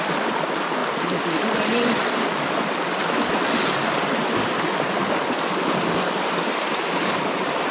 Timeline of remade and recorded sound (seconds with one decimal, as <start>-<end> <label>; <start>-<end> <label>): 0.0-7.7 recorded